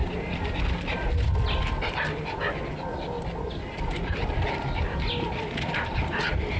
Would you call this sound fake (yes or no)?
no